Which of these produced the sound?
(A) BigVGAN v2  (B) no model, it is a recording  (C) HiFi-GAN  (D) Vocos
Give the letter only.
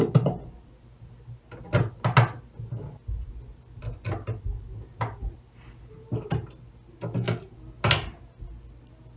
B